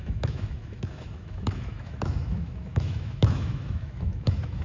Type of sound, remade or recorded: remade